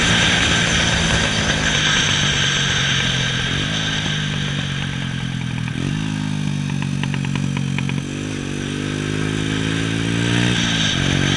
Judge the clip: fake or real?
real